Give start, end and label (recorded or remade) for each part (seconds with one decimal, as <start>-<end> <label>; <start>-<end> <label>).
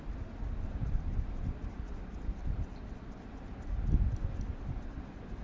0.0-5.4 recorded